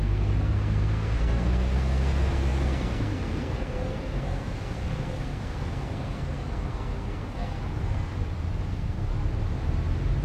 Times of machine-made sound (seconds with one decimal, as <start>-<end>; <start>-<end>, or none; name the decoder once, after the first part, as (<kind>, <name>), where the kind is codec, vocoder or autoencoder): 0.0-8.1 (codec, SNAC); 8.7-9.1